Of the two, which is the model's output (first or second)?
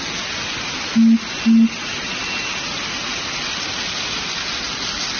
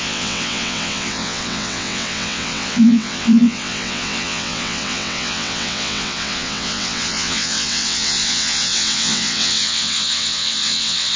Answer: second